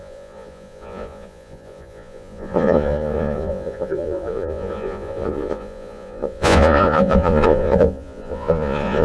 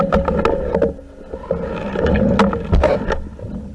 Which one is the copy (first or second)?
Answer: first